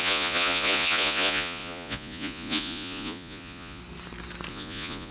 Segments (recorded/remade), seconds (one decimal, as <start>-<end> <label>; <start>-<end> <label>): 0.0-3.8 remade; 3.8-4.5 recorded; 4.5-5.1 remade